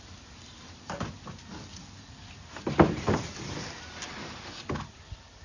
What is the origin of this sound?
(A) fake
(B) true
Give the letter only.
B